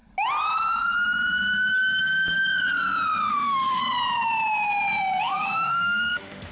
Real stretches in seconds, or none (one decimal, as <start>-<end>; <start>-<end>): 0.0-3.3; 3.8-5.2